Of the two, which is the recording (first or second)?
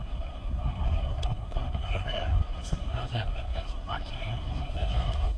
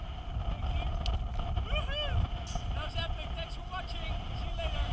second